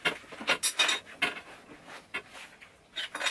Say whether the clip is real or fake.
real